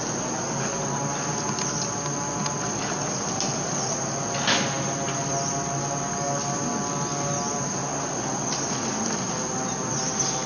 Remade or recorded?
recorded